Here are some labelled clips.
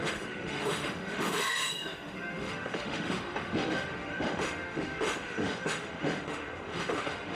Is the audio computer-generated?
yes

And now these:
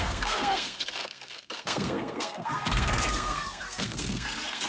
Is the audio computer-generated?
yes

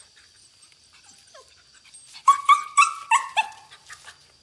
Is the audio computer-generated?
no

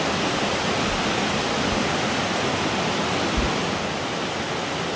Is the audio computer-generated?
no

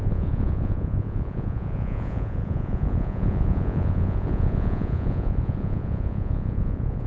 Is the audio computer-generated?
yes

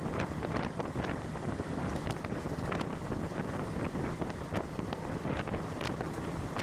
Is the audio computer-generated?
yes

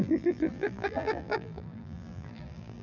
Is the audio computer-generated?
yes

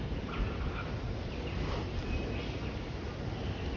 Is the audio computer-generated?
no